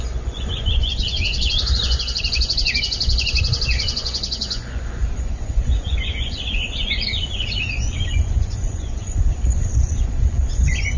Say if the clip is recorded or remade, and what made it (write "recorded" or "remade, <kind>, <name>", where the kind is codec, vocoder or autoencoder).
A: remade, vocoder, Vocos